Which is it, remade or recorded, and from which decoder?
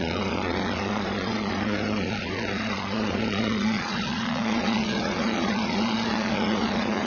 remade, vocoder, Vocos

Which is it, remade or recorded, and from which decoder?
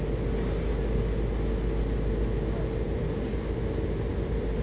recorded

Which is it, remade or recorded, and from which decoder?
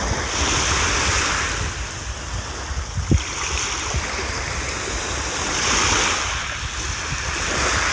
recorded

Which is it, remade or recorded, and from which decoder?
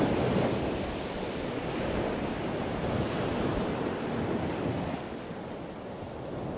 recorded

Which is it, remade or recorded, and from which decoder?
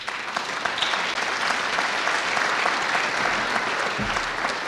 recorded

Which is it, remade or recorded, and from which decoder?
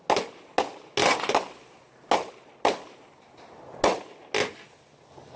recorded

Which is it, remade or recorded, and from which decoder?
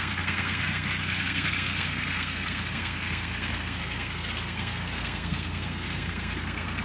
remade, codec, SNAC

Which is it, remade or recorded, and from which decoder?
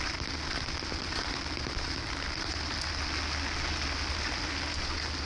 recorded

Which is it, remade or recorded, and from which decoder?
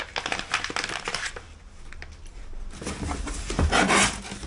recorded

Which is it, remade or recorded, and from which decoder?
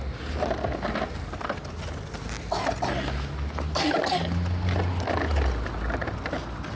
recorded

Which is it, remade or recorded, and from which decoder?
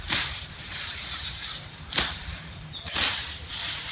remade, vocoder, BigVGAN v2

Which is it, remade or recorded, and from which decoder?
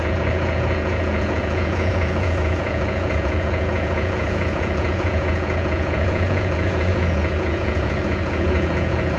remade, vocoder, Vocos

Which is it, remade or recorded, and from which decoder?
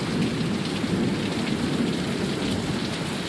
recorded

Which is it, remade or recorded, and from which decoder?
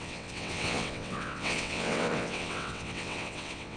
remade, vocoder, WaveNeXt